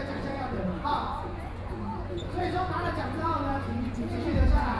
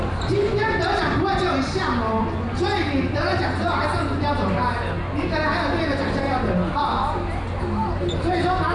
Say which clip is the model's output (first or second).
first